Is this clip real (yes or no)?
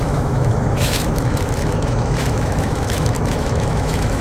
no